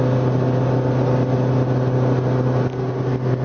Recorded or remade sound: recorded